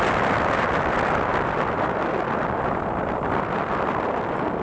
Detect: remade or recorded recorded